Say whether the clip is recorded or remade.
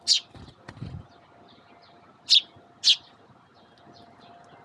recorded